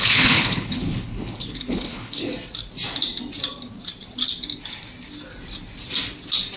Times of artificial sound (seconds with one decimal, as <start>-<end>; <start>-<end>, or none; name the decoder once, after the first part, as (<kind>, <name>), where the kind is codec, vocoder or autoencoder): 0.0-2.3 (codec, HILCodec)